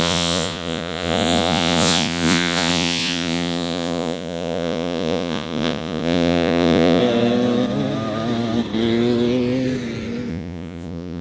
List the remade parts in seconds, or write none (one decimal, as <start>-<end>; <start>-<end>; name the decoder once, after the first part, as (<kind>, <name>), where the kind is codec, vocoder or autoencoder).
0.0-7.0 (vocoder, Vocos); 10.3-11.2